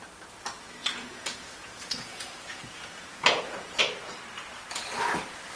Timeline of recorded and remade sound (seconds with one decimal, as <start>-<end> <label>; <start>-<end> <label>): 0.0-0.8 recorded; 0.8-3.8 remade; 3.8-5.6 recorded